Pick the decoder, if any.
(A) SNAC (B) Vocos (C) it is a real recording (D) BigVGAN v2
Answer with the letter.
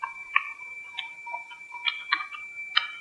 C